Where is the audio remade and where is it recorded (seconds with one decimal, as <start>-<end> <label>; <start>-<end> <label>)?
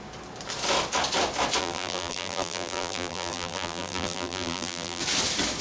0.0-1.6 recorded; 1.6-5.0 remade; 5.0-5.6 recorded